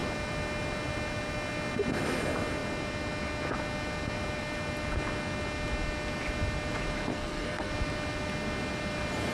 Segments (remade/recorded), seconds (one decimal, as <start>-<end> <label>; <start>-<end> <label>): 0.0-7.1 recorded; 7.1-7.7 remade; 7.7-9.3 recorded